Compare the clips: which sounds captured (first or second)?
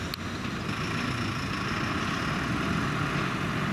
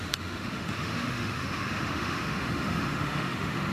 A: first